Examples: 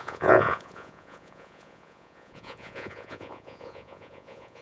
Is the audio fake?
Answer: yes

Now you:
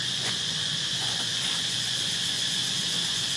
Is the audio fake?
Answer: yes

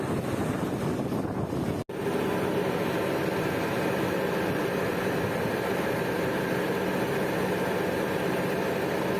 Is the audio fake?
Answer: no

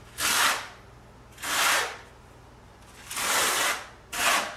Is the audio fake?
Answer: no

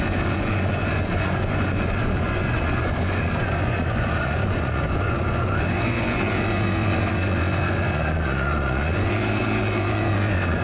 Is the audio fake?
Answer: yes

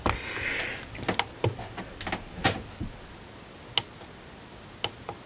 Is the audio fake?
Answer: no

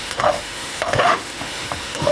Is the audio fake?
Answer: yes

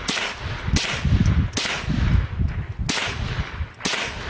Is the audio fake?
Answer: no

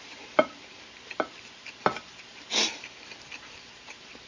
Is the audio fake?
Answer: yes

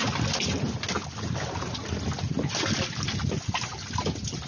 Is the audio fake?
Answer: no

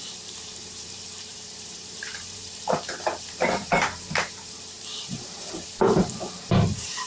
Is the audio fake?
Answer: yes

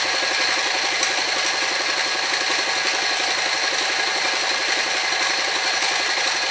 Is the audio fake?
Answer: no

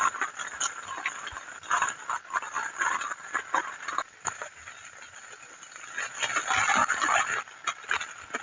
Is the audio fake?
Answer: no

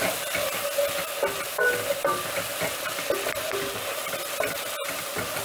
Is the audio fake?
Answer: no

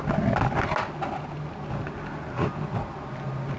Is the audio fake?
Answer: no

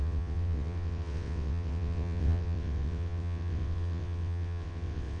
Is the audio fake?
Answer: yes